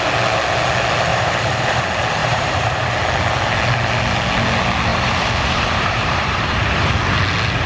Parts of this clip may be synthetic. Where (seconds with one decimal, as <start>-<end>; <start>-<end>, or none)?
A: 1.1-1.8; 2.2-2.9; 4.9-6.9